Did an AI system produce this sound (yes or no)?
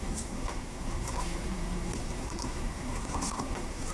yes